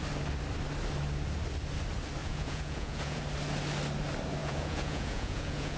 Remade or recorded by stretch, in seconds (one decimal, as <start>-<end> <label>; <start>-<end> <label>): 0.0-2.2 recorded; 2.2-3.2 remade; 3.2-4.4 recorded; 4.4-5.8 remade